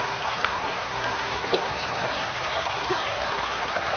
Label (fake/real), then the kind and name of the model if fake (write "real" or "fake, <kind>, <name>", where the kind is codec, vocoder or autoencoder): fake, codec, SNAC